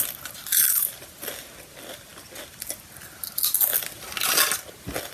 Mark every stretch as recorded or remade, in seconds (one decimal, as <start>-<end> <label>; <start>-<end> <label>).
0.0-5.1 recorded